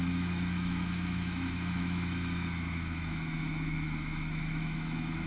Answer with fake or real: fake